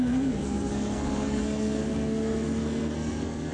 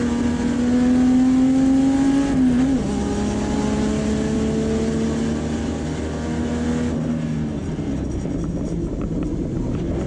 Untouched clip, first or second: second